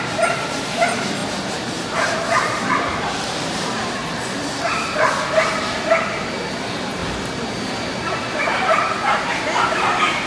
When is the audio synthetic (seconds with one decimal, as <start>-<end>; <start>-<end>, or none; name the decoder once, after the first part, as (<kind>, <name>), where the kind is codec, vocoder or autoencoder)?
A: 0.0-4.0 (vocoder, BigVGAN v2); 6.5-7.0; 8.7-10.3